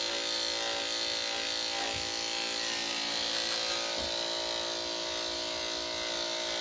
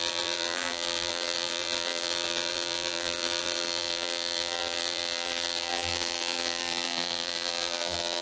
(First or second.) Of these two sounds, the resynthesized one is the second